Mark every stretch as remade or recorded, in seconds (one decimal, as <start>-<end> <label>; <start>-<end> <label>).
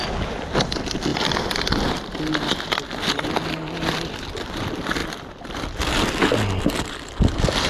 0.0-7.7 recorded